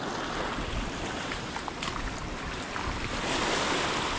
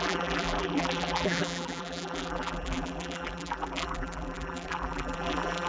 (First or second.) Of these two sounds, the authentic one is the first